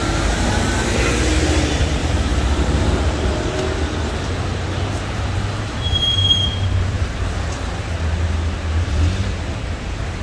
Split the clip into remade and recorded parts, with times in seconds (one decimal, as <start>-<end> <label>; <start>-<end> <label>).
0.0-0.7 remade; 0.7-2.0 recorded; 2.0-3.2 remade; 3.2-4.5 recorded; 4.5-7.3 remade; 7.3-10.2 recorded